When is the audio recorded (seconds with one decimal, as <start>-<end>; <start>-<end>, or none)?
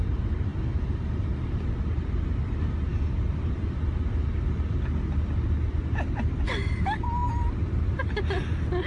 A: 0.0-8.9